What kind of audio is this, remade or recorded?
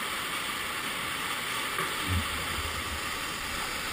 recorded